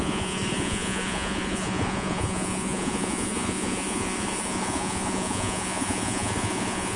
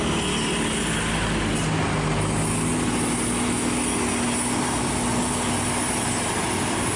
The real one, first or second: second